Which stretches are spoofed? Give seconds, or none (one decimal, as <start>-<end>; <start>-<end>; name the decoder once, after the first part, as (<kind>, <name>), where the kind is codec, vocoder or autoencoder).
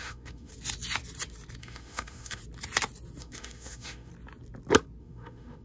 0.0-0.5 (autoencoder, DAC-VAE); 1.6-2.4; 3.2-4.1; 5.0-5.6